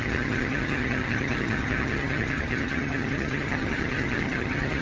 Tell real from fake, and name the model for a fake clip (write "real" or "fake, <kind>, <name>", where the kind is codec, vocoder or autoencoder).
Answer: fake, vocoder, HiFi-GAN